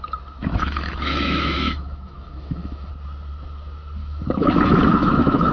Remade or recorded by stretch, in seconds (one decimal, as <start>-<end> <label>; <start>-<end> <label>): 0.0-0.4 recorded; 0.4-2.9 remade; 2.9-4.0 recorded; 4.0-5.5 remade